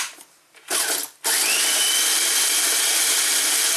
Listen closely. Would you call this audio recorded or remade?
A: recorded